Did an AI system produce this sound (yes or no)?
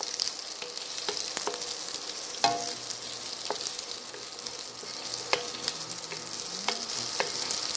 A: no